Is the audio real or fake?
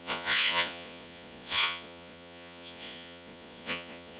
fake